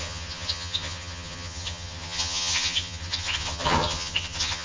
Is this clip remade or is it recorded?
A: remade